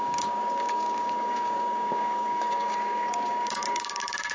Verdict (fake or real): fake